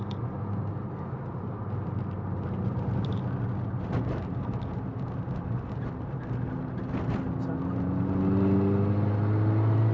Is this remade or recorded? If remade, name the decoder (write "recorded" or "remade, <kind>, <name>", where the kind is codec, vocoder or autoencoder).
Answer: recorded